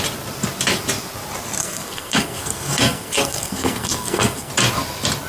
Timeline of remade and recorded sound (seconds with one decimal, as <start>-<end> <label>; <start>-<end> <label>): 0.0-1.6 recorded; 1.6-4.5 remade; 4.5-5.3 recorded